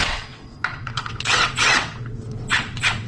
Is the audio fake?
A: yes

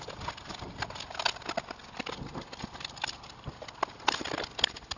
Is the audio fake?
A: no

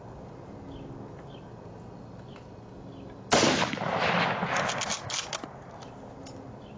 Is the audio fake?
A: no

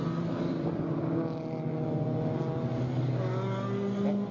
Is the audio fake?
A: no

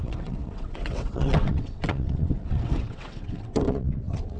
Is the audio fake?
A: yes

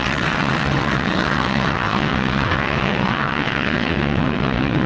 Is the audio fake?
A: yes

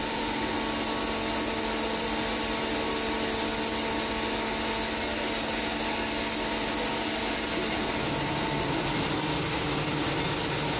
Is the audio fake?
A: no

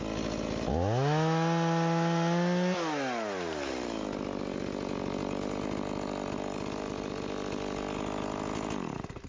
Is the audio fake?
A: no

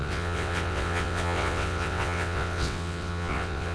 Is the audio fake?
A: yes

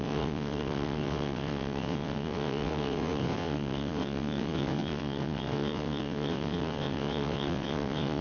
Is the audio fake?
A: yes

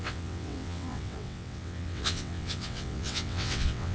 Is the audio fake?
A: yes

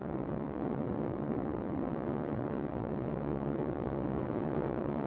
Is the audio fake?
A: yes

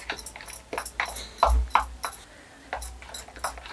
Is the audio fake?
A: no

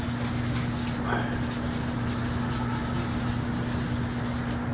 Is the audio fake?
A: no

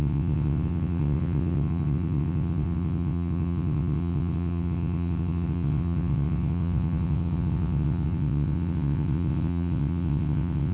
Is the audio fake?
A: yes